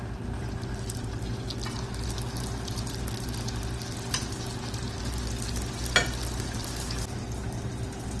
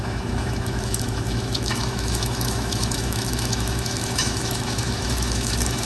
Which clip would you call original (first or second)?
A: first